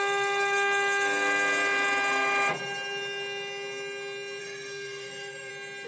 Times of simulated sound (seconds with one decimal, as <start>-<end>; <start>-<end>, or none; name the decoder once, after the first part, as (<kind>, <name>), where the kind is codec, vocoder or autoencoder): 4.4-5.5 (codec, SNAC)

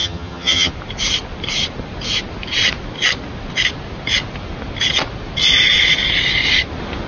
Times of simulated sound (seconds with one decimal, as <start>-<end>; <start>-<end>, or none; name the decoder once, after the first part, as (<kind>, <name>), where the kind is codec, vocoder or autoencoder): 0.0-0.7 (vocoder, HiFi-GAN)

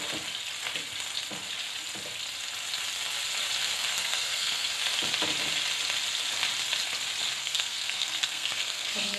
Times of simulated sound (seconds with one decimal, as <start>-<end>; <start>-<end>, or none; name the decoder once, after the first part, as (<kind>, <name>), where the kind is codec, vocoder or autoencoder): 3.6-4.7 (codec, SNAC); 7.4-9.2

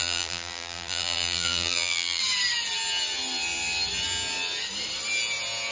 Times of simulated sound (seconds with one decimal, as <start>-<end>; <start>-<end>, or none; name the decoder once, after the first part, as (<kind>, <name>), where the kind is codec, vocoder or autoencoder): 0.0-2.2 (vocoder, BigVGAN v2)

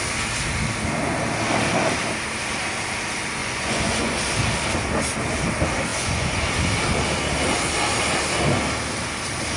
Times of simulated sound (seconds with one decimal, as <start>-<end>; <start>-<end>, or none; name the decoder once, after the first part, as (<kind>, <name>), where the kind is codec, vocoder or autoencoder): 3.4-4.2 (vocoder, Vocos); 5.9-6.4